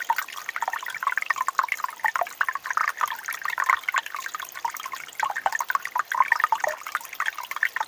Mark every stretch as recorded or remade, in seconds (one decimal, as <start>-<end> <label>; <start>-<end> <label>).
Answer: 0.0-7.9 recorded